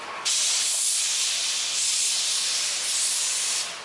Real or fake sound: real